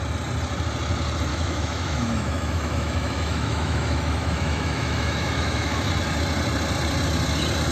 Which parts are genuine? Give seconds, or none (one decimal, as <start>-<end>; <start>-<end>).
0.0-1.3; 5.9-7.7